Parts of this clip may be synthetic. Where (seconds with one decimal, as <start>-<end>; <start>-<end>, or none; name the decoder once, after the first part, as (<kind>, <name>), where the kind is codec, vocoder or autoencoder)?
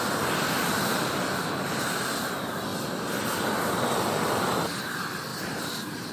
none